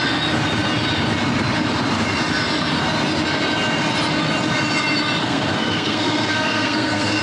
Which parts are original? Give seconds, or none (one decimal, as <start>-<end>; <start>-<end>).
0.0-5.2